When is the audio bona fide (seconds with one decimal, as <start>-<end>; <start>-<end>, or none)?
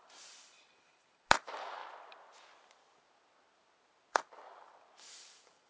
1.8-5.0